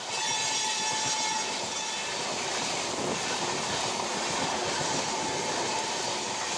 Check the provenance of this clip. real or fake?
real